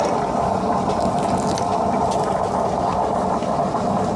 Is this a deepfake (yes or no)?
no